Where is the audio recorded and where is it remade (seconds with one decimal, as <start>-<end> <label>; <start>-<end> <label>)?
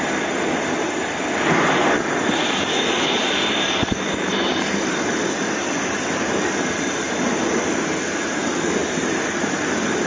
0.0-10.1 recorded